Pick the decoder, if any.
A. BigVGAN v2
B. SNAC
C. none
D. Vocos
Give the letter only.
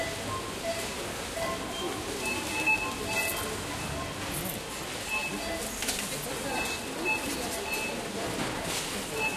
C